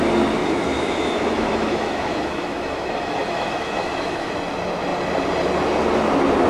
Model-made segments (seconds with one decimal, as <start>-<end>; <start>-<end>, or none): 0.4-4.3